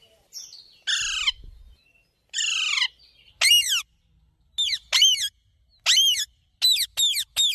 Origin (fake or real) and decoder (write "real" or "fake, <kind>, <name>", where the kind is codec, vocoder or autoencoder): real